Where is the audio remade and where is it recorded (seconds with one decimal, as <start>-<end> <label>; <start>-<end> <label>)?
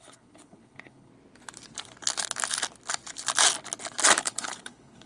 0.0-1.1 remade; 1.1-4.2 recorded; 4.2-5.1 remade